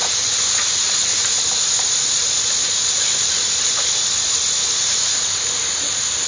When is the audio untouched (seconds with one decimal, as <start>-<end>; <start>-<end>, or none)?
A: 1.4-4.6; 5.4-6.3